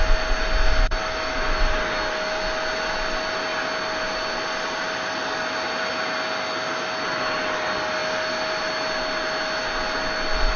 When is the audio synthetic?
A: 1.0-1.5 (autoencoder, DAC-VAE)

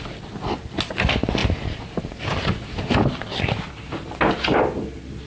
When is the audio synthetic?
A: none

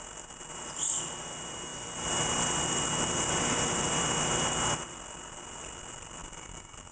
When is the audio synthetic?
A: none

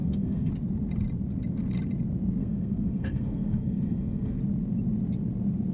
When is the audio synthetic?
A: 0.0-0.5 (codec, SNAC); 2.4-4.4

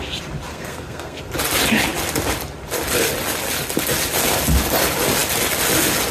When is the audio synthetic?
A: 0.5-1.2 (codec, SNAC)